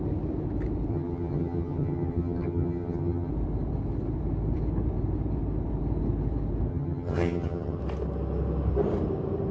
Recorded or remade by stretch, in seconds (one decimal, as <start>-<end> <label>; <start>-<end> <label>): 0.0-0.9 recorded; 0.9-3.3 remade; 3.3-6.7 recorded; 6.7-7.8 remade; 7.8-9.5 recorded